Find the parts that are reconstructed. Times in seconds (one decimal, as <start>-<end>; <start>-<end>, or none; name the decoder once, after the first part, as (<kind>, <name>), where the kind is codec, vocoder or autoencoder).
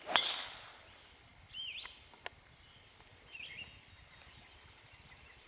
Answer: none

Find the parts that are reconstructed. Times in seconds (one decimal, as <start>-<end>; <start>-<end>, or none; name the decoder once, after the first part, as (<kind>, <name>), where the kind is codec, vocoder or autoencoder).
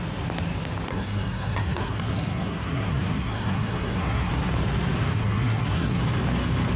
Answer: 0.9-4.3 (codec, SNAC); 5.1-6.0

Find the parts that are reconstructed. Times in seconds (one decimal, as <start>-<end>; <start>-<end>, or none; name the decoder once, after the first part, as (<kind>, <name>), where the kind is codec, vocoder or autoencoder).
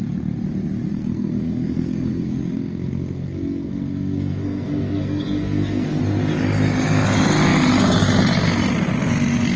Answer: 0.9-6.0 (codec, SNAC)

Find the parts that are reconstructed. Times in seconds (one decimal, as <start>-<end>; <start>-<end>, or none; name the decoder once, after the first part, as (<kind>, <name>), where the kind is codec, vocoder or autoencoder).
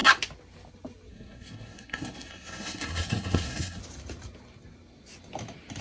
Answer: 1.1-3.8 (codec, SNAC)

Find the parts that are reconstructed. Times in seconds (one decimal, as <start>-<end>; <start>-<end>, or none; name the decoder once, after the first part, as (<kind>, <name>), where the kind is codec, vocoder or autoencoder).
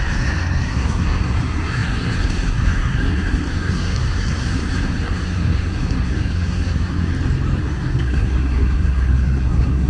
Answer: 0.0-7.1 (codec, SNAC); 7.6-9.9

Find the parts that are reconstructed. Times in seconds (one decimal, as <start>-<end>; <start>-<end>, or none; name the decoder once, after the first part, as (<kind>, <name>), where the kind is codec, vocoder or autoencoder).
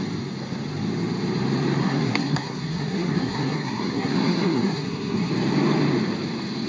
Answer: 1.8-5.3 (codec, SNAC)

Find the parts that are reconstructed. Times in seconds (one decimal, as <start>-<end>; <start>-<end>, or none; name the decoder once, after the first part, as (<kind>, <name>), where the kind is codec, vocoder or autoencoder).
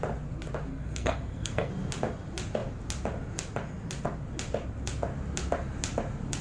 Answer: 0.7-1.7 (codec, SNAC)